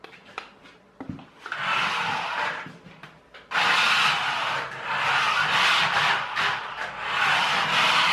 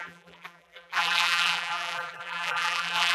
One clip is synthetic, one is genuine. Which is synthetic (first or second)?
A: second